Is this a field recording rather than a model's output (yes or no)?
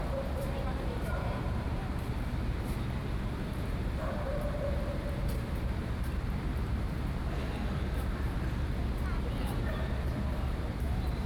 no